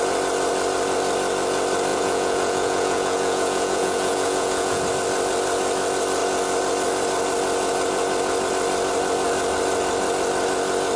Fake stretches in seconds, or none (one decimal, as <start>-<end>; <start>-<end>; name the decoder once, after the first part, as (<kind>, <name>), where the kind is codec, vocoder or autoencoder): 1.9-4.8 (vocoder, Vocos)